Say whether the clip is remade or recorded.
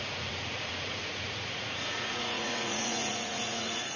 remade